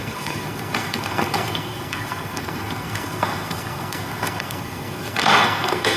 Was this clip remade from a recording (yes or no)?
yes